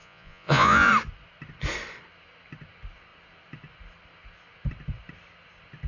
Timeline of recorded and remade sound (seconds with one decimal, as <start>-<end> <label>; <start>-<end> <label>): 0.0-0.9 remade; 0.9-5.9 recorded